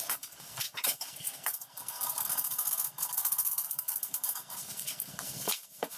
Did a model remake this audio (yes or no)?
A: yes